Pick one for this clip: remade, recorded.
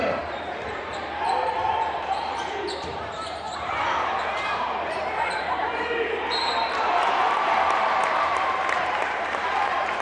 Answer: remade